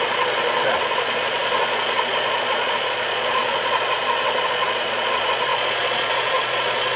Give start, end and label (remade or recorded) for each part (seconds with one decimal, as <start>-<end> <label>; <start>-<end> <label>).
0.0-7.0 remade